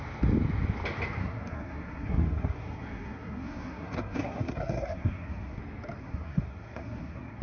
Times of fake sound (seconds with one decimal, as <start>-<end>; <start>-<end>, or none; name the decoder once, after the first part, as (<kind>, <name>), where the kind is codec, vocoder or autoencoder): 1.2-5.6 (codec, SNAC); 6.0-7.4